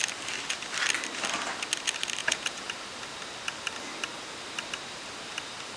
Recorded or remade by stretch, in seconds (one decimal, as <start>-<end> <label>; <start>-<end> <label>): 0.0-2.2 recorded; 2.2-2.7 remade; 2.7-5.8 recorded